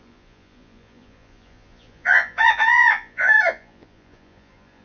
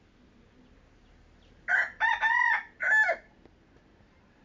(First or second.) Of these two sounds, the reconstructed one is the first